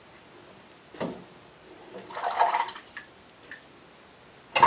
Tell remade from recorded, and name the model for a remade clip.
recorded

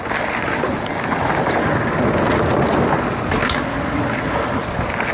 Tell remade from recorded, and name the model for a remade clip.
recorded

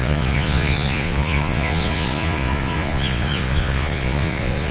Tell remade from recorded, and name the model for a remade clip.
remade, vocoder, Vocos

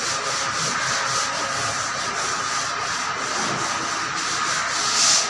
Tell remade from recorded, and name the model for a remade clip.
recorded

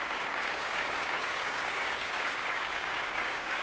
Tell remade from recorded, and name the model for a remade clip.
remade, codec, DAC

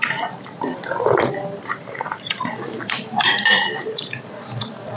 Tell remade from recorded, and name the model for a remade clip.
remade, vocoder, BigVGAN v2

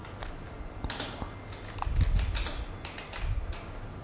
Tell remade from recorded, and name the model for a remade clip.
recorded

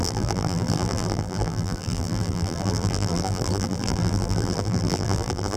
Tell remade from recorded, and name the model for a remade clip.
remade, vocoder, BigVGAN v2